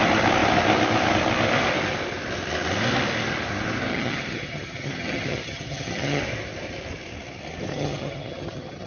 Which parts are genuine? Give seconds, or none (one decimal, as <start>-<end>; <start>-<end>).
0.0-3.9; 6.2-7.7